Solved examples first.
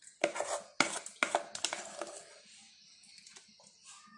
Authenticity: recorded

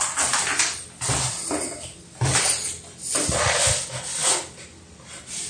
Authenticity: recorded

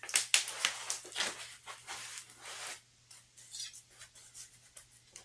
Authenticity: recorded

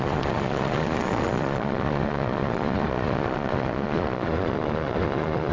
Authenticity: remade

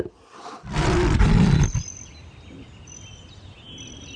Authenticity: recorded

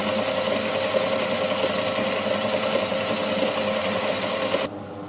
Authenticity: recorded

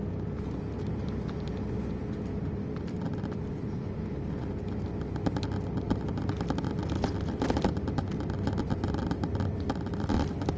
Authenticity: recorded